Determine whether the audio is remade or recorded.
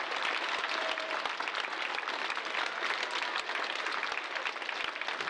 recorded